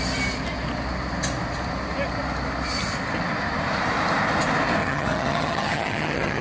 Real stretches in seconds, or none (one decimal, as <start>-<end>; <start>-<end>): 0.0-4.8